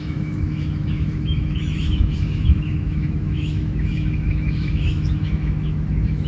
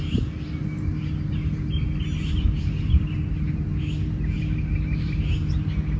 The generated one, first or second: first